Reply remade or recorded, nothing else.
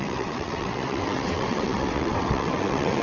remade